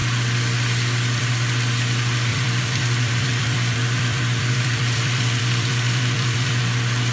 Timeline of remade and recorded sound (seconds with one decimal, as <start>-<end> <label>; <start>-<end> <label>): 0.0-2.3 recorded; 2.3-6.6 remade; 6.6-7.1 recorded